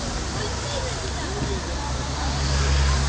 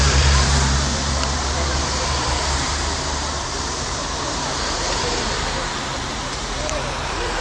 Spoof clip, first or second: second